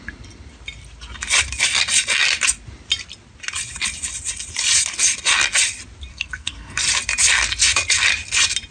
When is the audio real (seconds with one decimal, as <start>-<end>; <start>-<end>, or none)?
0.0-6.1; 6.8-8.7